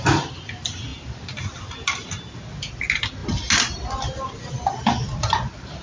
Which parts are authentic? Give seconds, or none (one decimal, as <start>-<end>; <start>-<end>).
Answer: 0.0-5.8